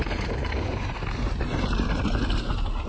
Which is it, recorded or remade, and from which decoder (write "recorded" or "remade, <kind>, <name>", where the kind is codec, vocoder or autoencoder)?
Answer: recorded